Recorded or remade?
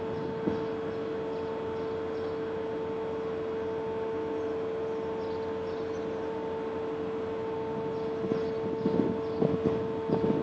recorded